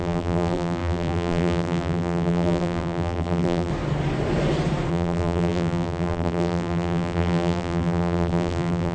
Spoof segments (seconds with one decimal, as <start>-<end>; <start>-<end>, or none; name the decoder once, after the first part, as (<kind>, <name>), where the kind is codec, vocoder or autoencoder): 0.0-3.7 (vocoder, BigVGAN v2); 4.9-8.9